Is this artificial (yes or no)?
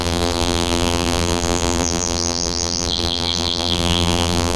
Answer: yes